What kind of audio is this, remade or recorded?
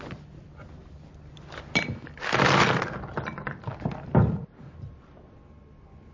recorded